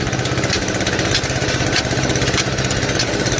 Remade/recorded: recorded